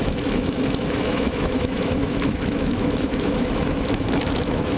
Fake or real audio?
fake